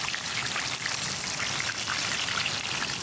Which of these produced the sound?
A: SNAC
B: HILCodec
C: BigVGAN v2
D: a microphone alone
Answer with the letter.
D